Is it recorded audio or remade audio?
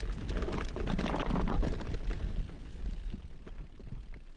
recorded